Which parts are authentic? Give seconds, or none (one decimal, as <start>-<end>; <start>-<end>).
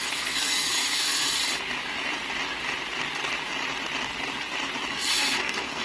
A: 1.4-4.9